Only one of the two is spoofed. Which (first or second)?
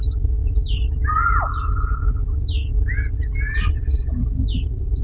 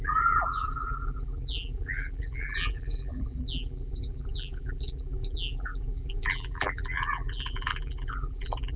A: second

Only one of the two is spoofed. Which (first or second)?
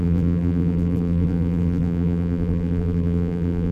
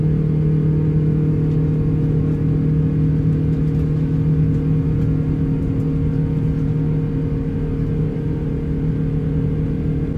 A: first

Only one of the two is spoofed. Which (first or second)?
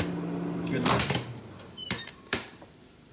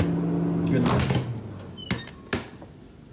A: first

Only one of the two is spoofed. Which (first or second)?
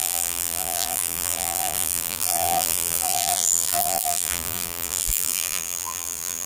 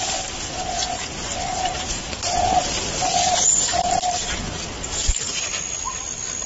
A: first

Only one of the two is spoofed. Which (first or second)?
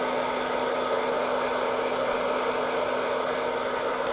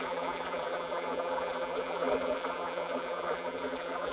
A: second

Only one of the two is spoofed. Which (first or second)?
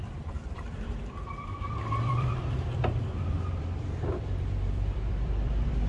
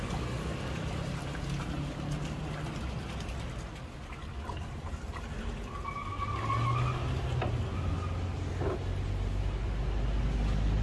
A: first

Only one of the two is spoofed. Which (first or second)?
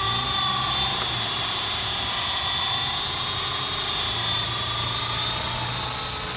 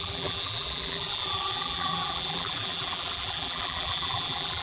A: second